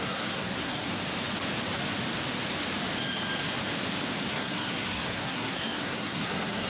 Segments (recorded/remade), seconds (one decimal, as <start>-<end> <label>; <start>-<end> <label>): 0.0-0.9 remade; 0.9-4.3 recorded; 4.3-6.7 remade